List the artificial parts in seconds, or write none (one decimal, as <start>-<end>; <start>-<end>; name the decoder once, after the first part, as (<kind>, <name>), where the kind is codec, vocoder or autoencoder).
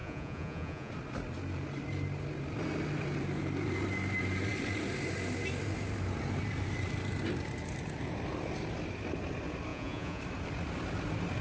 0.0-0.9 (vocoder, Vocos); 9.7-10.2